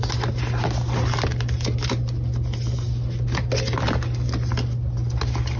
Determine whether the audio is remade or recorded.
recorded